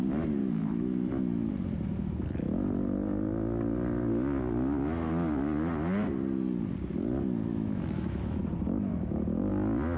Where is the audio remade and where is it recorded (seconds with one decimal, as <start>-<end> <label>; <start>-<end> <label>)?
0.0-0.4 recorded; 0.4-1.5 remade; 1.5-7.5 recorded; 7.5-8.4 remade; 8.4-8.9 recorded; 8.9-9.5 remade; 9.5-10.0 recorded